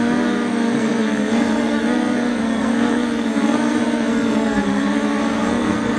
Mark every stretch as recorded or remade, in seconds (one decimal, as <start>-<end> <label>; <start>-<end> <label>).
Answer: 0.0-6.0 remade